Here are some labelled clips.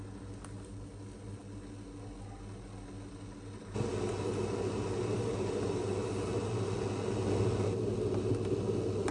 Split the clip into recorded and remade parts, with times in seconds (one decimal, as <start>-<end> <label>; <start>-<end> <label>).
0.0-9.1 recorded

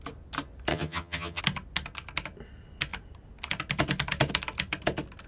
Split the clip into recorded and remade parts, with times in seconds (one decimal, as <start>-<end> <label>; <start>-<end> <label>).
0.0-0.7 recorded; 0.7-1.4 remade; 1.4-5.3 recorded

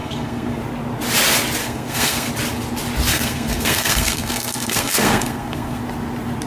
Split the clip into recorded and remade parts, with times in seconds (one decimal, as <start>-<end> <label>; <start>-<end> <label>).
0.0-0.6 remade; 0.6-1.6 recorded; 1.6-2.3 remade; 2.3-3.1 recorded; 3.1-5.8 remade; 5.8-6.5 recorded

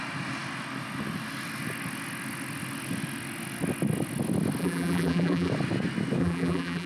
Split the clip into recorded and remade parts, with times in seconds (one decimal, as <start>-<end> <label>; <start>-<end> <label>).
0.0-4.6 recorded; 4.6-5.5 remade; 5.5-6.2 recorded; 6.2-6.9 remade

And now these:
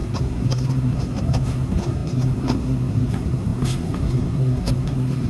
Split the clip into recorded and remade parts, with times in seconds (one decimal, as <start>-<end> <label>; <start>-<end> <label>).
0.0-5.3 remade

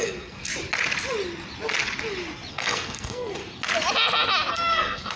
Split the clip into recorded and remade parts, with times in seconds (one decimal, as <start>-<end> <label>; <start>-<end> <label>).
0.0-0.5 remade; 0.5-2.5 recorded; 2.5-3.4 remade; 3.4-4.5 recorded; 4.5-5.2 remade

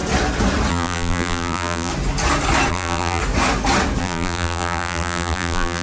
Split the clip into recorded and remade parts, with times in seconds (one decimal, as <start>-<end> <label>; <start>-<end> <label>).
0.0-0.7 recorded; 0.7-1.9 remade; 1.9-2.7 recorded; 2.7-3.2 remade; 3.2-4.0 recorded; 4.0-5.8 remade

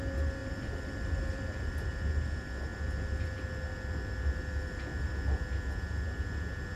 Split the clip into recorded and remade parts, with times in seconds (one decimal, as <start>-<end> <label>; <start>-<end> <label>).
0.0-0.4 recorded; 0.4-1.7 remade; 1.7-6.8 recorded